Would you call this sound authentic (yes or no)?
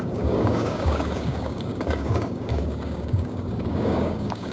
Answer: no